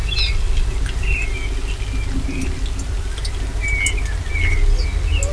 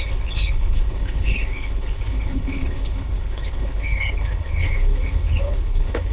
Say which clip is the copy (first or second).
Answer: second